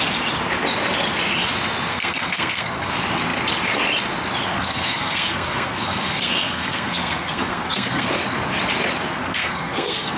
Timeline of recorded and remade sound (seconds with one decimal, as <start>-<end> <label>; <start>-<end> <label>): 0.0-1.9 recorded; 1.9-2.9 remade; 2.9-4.5 recorded; 4.5-8.1 remade; 8.1-9.2 recorded; 9.2-10.2 remade